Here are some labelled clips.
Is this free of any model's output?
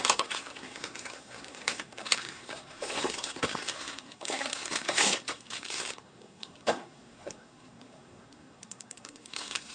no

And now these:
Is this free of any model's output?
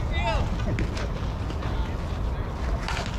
yes